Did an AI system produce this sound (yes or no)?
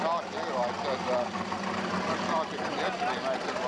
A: no